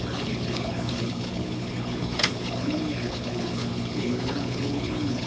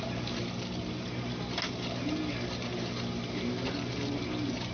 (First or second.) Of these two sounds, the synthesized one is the first